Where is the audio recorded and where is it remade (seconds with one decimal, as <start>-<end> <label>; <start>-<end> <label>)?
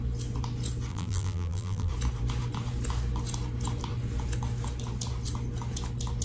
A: 0.0-0.9 recorded; 0.9-1.9 remade; 1.9-6.2 recorded